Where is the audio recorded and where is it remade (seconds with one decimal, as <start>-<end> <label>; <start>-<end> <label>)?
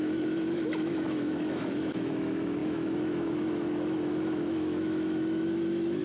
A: 0.0-6.0 remade